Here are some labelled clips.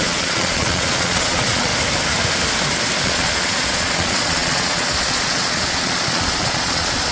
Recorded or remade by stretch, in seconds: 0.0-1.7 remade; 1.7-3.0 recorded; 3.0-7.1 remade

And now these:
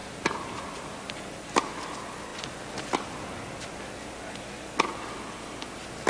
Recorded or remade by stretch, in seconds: 0.0-6.1 recorded

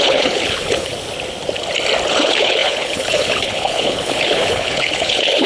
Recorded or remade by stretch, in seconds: 0.0-0.9 remade; 0.9-2.1 recorded; 2.1-5.5 remade

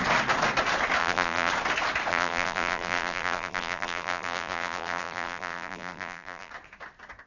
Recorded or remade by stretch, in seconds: 0.0-1.0 recorded; 1.0-1.5 remade; 1.5-2.1 recorded; 2.1-6.5 remade; 6.5-7.3 recorded

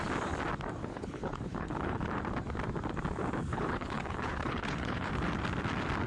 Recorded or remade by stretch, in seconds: 0.0-0.8 recorded; 0.8-2.1 remade; 2.1-3.5 recorded; 3.5-5.1 remade; 5.1-6.1 recorded

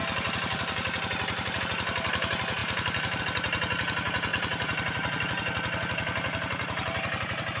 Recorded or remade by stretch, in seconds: 0.0-1.6 remade; 1.6-2.6 recorded; 2.6-3.2 remade; 3.2-4.3 recorded; 4.3-7.6 remade

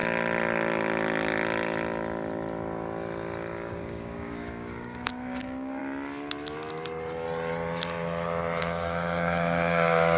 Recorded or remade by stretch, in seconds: 0.0-3.7 recorded; 3.7-5.8 remade; 5.8-8.6 recorded; 8.6-10.2 remade